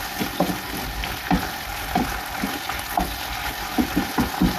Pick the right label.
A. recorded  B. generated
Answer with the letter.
A